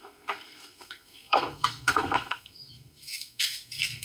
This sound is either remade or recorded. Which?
remade